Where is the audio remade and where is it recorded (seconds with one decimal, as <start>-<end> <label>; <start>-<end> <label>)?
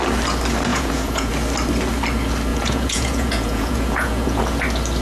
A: 0.0-0.7 recorded; 0.7-1.3 remade; 1.3-2.5 recorded; 2.5-4.4 remade; 4.4-5.0 recorded